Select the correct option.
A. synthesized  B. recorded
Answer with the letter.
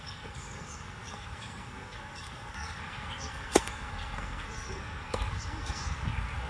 A